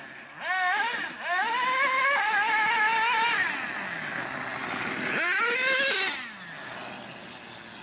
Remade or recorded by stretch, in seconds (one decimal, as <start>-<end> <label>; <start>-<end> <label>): 0.0-7.8 recorded